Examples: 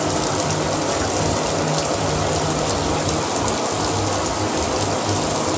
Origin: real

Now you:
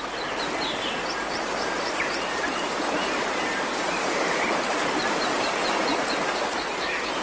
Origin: real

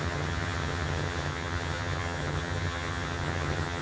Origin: fake